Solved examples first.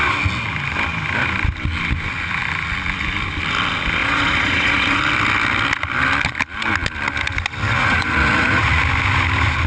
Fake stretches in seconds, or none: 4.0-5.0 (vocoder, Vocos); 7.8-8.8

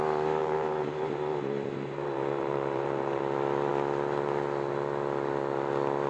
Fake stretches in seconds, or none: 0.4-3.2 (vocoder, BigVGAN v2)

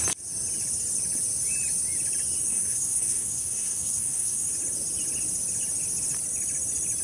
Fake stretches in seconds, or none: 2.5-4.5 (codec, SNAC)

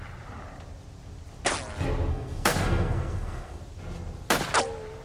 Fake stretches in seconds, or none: 2.1-3.6 (codec, SNAC)